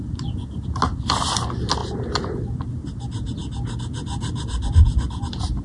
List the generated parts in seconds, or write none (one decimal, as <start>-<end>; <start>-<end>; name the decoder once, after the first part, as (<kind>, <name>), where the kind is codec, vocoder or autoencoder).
none